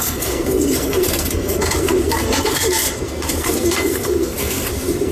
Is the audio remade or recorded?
remade